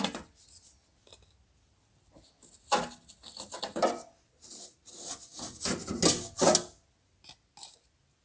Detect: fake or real real